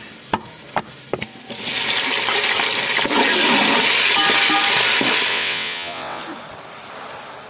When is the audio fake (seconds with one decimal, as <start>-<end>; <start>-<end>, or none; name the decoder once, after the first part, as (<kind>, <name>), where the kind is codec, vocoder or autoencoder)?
5.3-6.2 (vocoder, WaveNeXt)